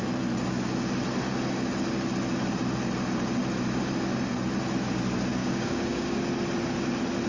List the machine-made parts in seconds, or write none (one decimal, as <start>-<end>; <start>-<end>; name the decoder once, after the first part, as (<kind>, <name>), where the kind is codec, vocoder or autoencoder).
5.4-6.2 (codec, DAC)